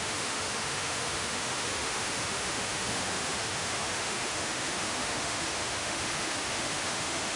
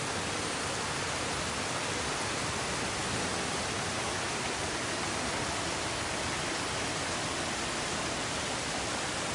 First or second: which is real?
second